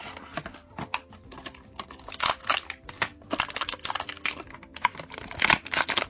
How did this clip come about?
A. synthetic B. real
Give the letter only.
B